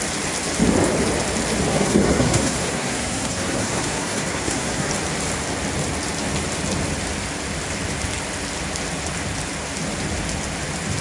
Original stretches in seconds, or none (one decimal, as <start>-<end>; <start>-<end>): 0.0-1.7; 4.9-11.0